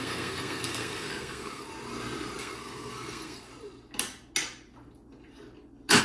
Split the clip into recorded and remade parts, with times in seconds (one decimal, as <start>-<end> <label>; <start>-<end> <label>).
0.0-1.7 remade; 1.7-2.4 recorded; 2.4-3.5 remade; 3.5-6.0 recorded